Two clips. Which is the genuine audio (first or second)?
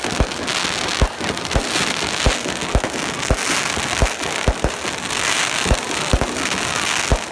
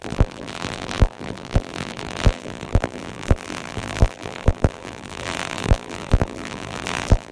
first